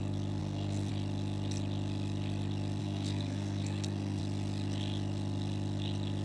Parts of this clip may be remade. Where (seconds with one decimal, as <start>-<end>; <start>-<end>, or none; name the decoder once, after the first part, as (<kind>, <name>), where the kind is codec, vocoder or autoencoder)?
0.4-0.9 (codec, SNAC); 2.8-4.2